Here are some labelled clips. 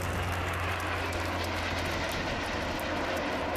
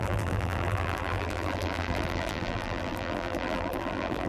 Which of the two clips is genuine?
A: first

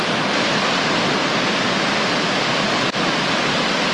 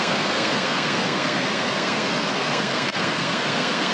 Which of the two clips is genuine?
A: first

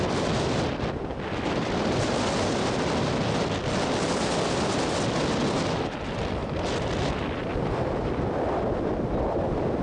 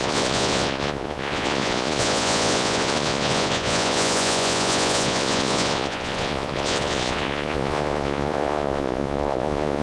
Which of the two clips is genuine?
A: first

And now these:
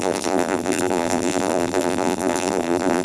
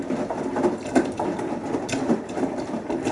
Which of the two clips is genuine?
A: second